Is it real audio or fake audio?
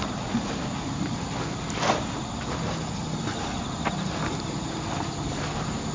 real